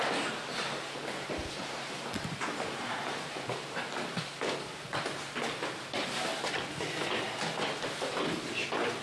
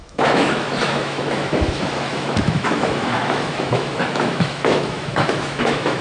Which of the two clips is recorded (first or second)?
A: first